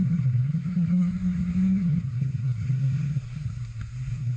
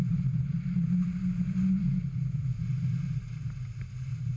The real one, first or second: second